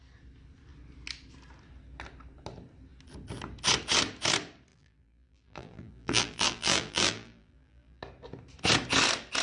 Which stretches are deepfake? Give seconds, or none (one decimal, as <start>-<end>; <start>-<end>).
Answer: 4.7-8.0